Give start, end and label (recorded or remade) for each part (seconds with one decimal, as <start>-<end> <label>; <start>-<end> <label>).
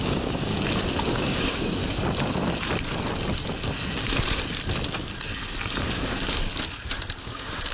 0.0-0.5 remade; 0.5-1.1 recorded; 1.1-1.8 remade; 1.8-5.8 recorded; 5.8-6.5 remade; 6.5-7.2 recorded; 7.2-7.7 remade